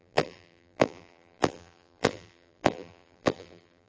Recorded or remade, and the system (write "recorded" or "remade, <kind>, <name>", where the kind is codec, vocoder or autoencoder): remade, vocoder, BigVGAN v2